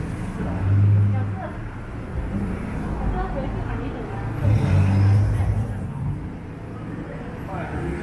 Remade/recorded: recorded